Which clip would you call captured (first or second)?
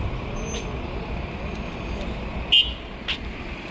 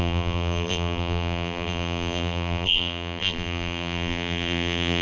first